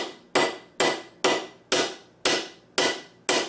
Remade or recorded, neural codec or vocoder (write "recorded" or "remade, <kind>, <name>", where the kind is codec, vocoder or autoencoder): recorded